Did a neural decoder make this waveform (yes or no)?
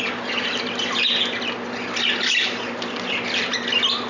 no